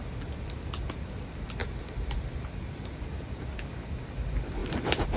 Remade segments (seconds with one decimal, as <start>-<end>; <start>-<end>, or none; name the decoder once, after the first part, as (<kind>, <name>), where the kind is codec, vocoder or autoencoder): 1.6-3.0 (vocoder, BigVGAN v2); 4.6-5.2